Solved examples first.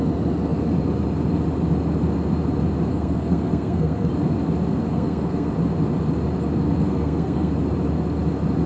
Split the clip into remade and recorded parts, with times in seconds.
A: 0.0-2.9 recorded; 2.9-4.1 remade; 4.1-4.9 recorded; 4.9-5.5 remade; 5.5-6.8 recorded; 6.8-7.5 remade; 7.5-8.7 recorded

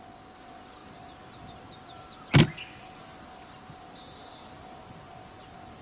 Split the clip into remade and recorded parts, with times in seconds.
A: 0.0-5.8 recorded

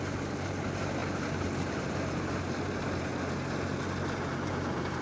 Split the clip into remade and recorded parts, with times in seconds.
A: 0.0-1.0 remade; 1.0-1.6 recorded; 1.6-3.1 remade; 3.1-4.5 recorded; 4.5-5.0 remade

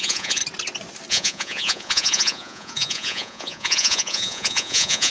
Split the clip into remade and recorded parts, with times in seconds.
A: 0.0-0.4 remade; 0.4-1.1 recorded; 1.1-5.1 remade

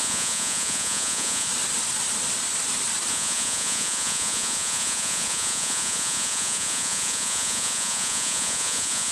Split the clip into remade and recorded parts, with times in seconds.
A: 0.0-1.5 remade; 1.5-3.1 recorded; 3.1-9.1 remade